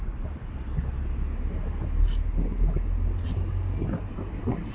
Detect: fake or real real